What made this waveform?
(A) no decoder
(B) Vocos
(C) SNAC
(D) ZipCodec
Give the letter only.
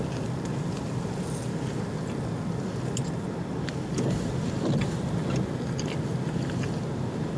A